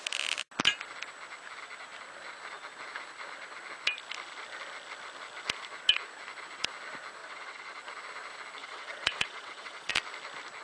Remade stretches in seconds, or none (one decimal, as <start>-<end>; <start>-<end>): 7.2-7.8; 8.6-9.9